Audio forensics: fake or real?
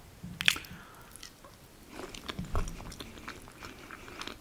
real